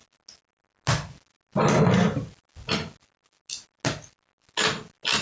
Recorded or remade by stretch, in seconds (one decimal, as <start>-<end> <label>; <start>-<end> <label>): 0.0-5.2 recorded

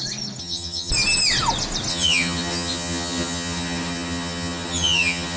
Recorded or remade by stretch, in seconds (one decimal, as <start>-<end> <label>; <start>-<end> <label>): 0.0-0.4 recorded; 0.4-0.9 remade; 0.9-1.9 recorded; 1.9-5.4 remade

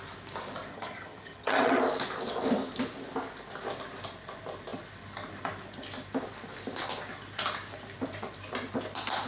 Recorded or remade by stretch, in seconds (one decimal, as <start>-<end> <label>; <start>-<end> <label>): 0.0-0.7 recorded; 0.7-1.8 remade; 1.8-9.3 recorded

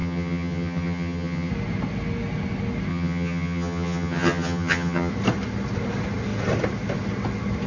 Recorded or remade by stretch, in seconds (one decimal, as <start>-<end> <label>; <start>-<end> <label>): 0.0-1.5 remade; 1.5-2.9 recorded; 2.9-5.1 remade; 5.1-7.7 recorded

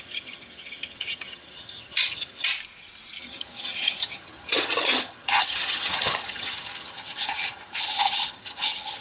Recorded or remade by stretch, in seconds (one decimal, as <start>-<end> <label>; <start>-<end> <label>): 0.0-2.5 remade; 2.5-3.2 recorded; 3.2-9.0 remade